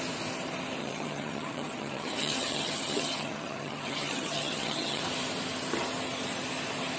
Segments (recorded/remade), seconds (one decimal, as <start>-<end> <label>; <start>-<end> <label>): 0.0-0.8 recorded; 0.8-5.0 remade; 5.0-7.0 recorded